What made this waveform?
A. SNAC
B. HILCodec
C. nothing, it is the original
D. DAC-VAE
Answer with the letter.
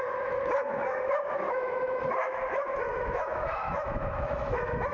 D